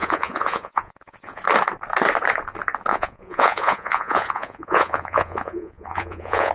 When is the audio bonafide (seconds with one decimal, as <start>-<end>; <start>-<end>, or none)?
1.4-2.9